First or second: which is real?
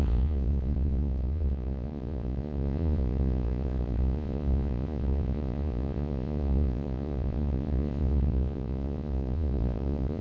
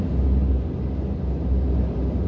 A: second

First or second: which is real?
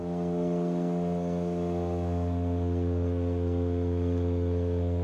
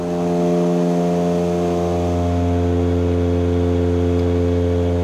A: second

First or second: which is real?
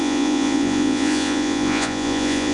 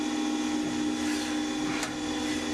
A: second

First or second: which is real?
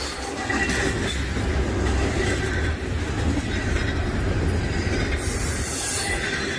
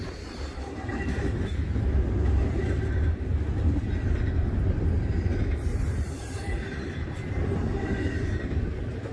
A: first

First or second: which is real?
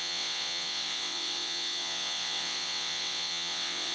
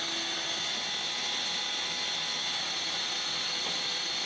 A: second